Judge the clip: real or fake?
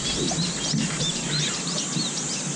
real